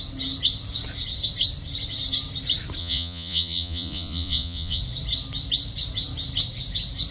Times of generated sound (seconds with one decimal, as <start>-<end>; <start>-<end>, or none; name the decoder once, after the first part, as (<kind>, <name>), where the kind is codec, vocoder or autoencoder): 2.8-4.8 (vocoder, Vocos)